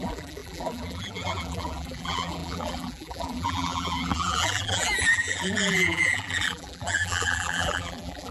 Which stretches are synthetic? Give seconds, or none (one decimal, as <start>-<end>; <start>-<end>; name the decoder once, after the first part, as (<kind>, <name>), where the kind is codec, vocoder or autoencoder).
0.0-8.3 (vocoder, BigVGAN v2)